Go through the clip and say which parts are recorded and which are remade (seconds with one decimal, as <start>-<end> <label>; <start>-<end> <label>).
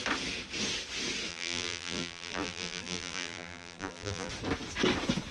0.0-1.3 recorded; 1.3-4.3 remade; 4.3-5.3 recorded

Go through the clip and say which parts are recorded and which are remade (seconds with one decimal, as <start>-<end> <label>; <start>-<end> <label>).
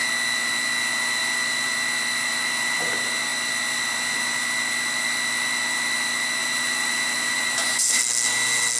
0.0-6.4 recorded; 6.4-8.0 remade; 8.0-8.8 recorded